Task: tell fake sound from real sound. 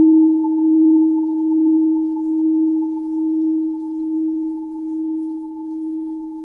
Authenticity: fake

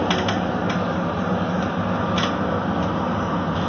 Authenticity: real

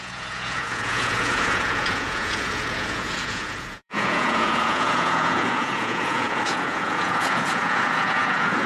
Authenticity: fake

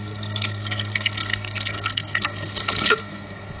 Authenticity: fake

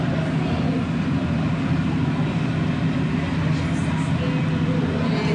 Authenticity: real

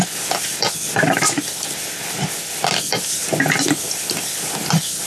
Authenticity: real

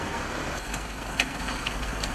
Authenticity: fake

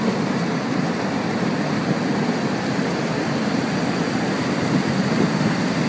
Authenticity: real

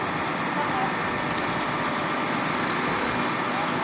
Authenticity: real